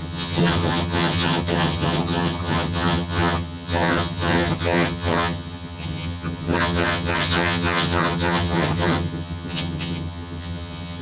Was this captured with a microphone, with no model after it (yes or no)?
no